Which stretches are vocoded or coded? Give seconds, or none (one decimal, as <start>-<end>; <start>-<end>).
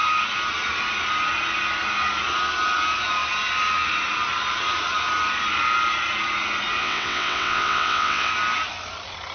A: 6.8-8.3